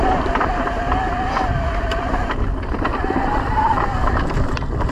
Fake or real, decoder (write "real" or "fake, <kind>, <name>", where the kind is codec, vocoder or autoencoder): real